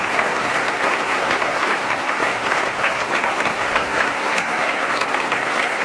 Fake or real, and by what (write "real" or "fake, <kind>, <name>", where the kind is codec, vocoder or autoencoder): fake, codec, SNAC